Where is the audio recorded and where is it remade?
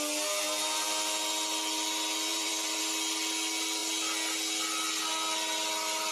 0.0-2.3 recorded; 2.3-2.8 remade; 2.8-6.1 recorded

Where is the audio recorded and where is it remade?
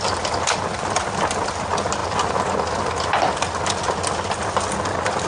0.0-5.3 recorded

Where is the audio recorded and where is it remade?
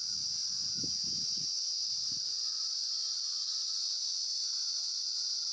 0.0-5.5 recorded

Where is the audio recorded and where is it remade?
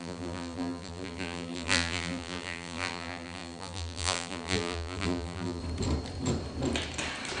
0.0-5.6 remade; 5.6-7.4 recorded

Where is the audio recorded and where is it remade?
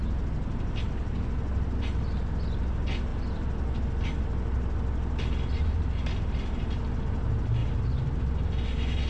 0.0-7.6 recorded; 7.6-8.2 remade; 8.2-9.1 recorded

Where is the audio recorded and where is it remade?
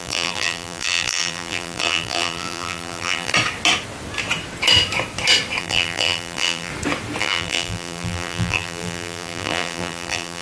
0.0-3.3 remade; 3.3-5.6 recorded; 5.6-6.7 remade; 6.7-7.2 recorded; 7.2-10.4 remade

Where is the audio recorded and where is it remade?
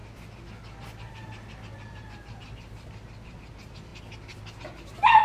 0.0-5.2 recorded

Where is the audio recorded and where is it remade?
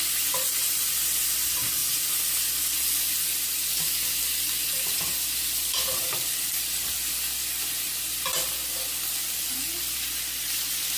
0.0-11.0 recorded